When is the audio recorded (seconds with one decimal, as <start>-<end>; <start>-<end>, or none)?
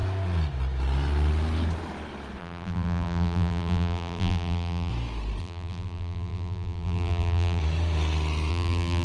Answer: 0.0-2.4; 4.9-5.4; 7.6-8.5